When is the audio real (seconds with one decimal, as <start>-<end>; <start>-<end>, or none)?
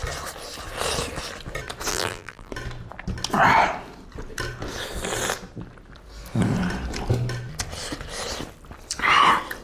0.0-1.9; 2.5-9.6